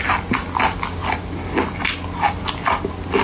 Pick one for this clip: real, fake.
real